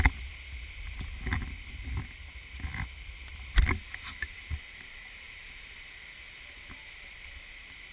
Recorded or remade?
recorded